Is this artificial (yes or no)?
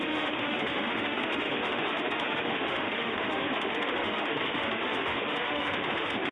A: yes